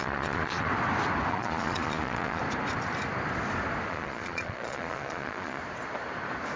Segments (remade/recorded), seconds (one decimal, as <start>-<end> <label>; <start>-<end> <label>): 0.0-0.7 remade; 0.7-1.3 recorded; 1.3-2.4 remade; 2.4-3.9 recorded; 3.9-5.6 remade; 5.6-6.6 recorded